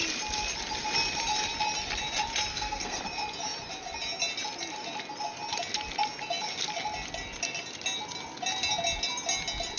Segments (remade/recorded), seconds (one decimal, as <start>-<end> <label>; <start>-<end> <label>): 0.0-2.5 recorded; 2.5-3.0 remade; 3.0-9.8 recorded